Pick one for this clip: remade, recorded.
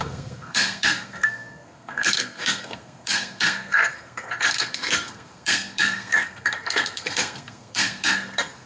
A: remade